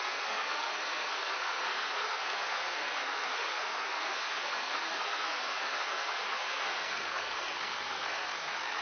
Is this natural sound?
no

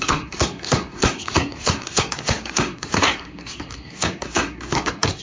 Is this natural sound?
no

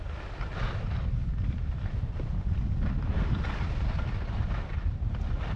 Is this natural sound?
yes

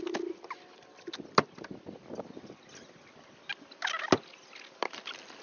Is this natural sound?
yes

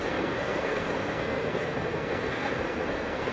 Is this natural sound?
no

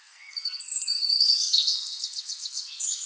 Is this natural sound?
no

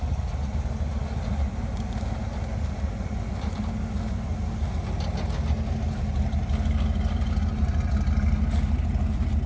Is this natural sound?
yes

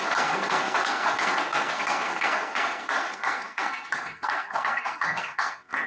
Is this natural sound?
no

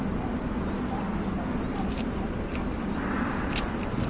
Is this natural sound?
yes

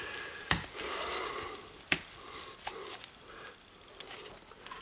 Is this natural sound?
yes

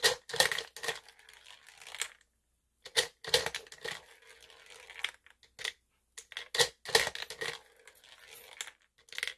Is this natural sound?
yes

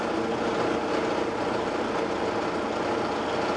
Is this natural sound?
yes